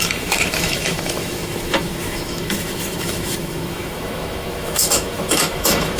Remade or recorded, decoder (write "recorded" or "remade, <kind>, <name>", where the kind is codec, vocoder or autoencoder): remade, autoencoder, DAC-VAE